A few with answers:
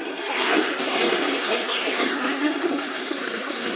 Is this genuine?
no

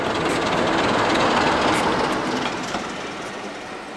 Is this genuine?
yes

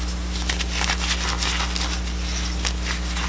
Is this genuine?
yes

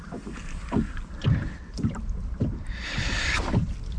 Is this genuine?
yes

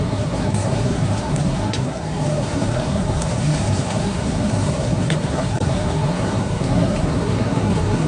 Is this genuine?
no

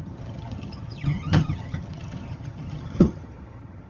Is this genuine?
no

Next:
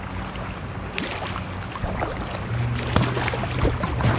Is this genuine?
yes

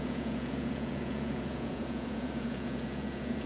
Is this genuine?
no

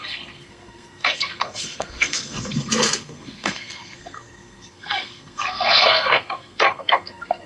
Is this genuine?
no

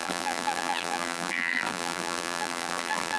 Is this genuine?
no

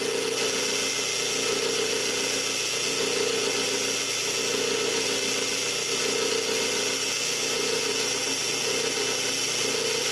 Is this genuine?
yes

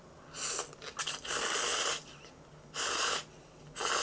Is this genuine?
yes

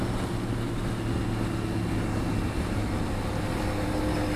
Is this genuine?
yes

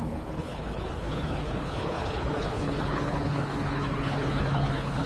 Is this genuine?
no